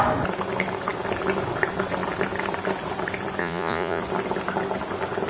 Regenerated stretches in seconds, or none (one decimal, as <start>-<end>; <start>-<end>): 3.4-4.0